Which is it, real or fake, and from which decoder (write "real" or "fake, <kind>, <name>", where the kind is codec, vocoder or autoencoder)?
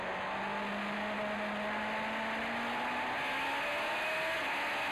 real